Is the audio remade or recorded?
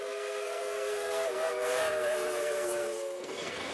remade